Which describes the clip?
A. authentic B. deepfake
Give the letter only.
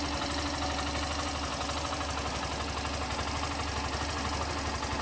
A